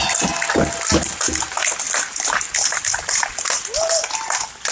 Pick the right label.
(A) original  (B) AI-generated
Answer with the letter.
A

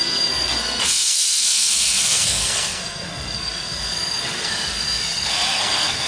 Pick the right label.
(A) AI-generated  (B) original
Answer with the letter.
A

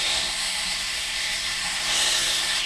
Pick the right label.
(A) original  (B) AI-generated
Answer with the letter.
B